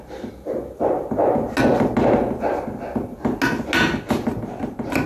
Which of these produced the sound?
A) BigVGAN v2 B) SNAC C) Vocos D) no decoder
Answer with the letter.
D